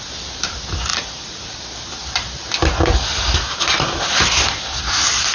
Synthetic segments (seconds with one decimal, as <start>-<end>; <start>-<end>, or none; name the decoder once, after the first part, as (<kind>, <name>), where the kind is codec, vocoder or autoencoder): 0.9-1.6 (vocoder, Vocos)